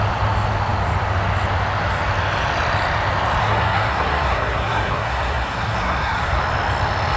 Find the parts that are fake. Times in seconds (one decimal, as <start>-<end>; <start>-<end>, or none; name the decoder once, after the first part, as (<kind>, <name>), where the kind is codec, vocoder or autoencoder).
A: 3.4-6.4 (codec, SNAC)